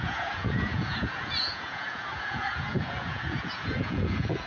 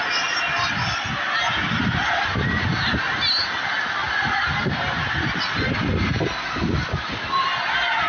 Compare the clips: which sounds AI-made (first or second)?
first